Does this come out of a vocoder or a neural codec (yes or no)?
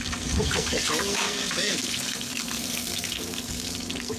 yes